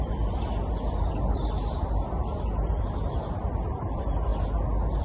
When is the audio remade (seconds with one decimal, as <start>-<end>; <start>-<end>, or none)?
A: 0.0-4.3